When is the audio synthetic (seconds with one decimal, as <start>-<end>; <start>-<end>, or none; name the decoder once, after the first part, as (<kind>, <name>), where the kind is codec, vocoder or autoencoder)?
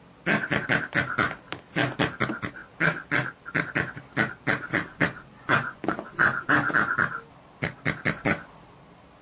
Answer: 4.7-6.7 (vocoder, Vocos)